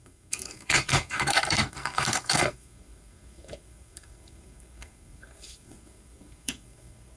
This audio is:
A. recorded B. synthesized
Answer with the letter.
B